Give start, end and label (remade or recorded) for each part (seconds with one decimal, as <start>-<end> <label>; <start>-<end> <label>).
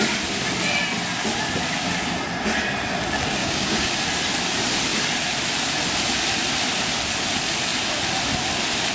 0.0-3.4 recorded; 3.4-3.9 remade; 3.9-8.9 recorded